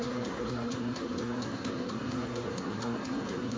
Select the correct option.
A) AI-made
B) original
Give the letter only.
A